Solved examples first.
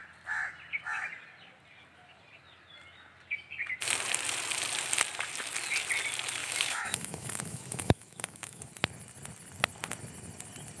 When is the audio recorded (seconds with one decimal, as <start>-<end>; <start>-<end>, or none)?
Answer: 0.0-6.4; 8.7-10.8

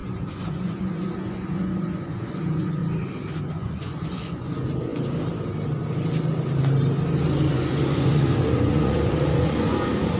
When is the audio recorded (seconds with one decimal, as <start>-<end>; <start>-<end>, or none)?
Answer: 2.8-3.4; 4.9-7.5

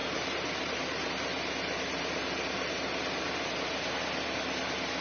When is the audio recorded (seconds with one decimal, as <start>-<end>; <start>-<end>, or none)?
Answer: 1.1-5.0

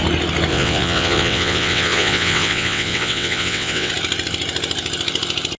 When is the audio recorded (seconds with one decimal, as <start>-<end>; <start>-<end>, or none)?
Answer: 0.0-0.5; 3.9-5.6

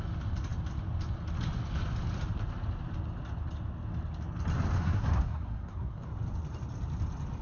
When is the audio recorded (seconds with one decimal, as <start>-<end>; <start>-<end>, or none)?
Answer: 0.0-4.8; 6.1-7.4